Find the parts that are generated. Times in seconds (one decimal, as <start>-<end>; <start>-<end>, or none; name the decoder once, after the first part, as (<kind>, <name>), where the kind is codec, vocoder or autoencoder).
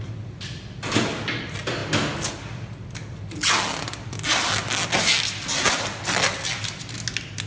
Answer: none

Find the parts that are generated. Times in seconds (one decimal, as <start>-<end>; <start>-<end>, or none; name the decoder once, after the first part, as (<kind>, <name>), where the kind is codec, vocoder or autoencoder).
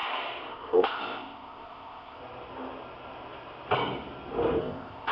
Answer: 0.5-2.2 (codec, ZipCodec); 4.6-5.1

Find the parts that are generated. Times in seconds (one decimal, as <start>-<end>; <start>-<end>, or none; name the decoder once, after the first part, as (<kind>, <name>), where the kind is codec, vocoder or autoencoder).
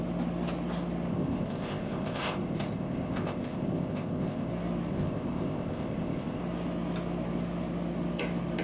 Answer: 1.1-4.5 (codec, ZipCodec); 4.9-6.4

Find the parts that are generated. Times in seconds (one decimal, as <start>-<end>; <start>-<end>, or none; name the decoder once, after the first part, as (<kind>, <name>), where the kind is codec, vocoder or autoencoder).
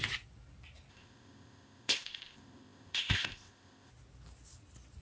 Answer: 0.9-3.9 (codec, ZipCodec)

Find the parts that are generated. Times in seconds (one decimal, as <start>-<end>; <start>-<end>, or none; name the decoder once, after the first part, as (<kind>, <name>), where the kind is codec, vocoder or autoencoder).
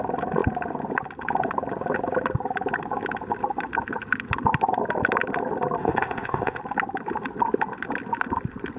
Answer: 5.8-6.6 (codec, ZipCodec)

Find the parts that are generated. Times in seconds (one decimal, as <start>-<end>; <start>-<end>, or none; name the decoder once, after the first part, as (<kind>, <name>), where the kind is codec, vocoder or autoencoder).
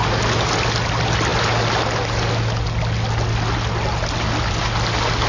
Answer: none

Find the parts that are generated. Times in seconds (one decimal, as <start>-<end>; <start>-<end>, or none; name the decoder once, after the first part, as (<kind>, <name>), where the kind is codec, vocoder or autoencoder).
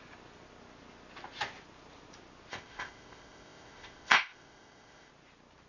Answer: 2.5-5.1 (codec, ZipCodec)